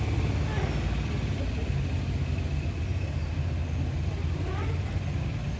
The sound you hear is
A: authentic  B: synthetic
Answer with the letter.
A